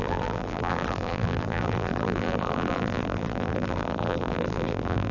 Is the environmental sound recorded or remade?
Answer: remade